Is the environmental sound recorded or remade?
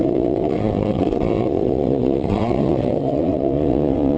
remade